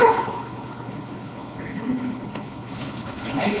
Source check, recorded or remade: remade